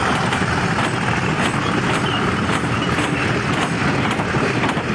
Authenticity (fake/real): real